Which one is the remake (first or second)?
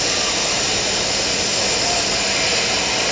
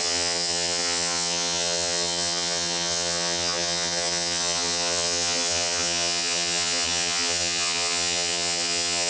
second